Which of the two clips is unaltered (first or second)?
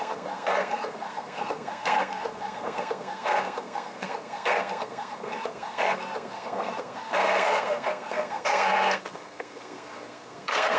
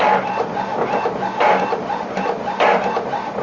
second